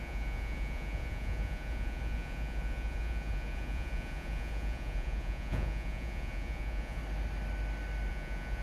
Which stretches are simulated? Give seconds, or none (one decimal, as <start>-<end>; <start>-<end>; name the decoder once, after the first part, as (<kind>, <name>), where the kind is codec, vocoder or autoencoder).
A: 0.0-7.0 (vocoder, Vocos); 8.1-8.6